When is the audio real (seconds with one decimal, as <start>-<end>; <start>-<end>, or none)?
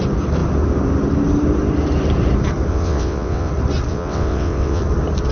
0.0-2.7; 3.5-3.9; 4.8-5.3